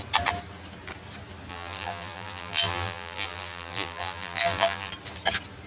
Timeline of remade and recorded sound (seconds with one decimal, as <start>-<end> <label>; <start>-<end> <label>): 0.0-1.5 recorded; 1.5-4.9 remade; 4.9-5.7 recorded